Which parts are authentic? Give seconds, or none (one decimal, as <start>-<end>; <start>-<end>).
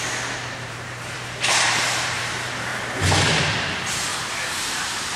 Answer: 2.7-3.4; 4.1-4.6